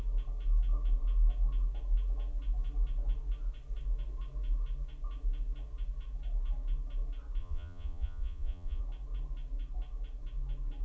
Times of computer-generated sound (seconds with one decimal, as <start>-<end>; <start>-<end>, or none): 7.4-8.8